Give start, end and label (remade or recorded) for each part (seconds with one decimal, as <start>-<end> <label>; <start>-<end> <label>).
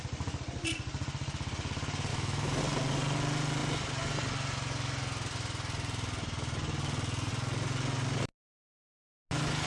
0.0-2.1 recorded; 2.1-2.6 remade; 2.6-9.7 recorded